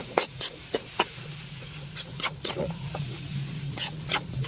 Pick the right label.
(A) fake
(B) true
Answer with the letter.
A